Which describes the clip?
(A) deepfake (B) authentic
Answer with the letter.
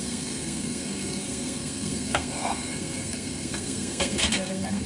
A